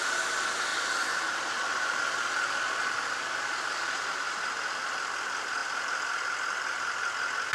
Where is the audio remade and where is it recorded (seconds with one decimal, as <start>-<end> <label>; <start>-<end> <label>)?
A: 0.0-7.5 recorded